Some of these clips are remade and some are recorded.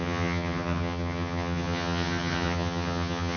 remade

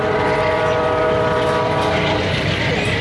recorded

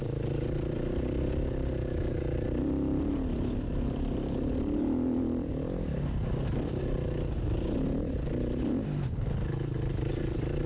recorded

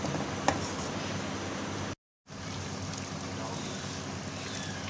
recorded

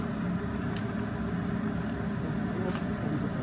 recorded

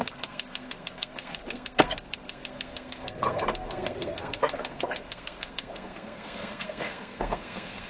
remade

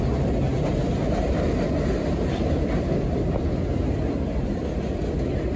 recorded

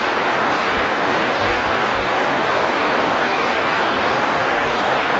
remade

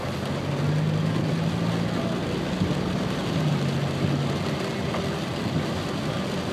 recorded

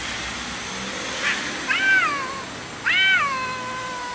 recorded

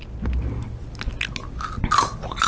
recorded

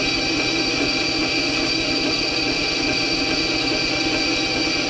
recorded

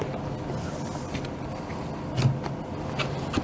recorded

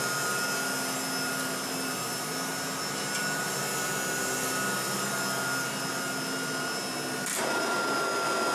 recorded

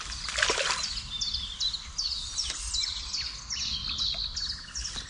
recorded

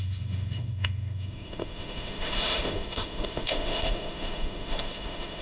remade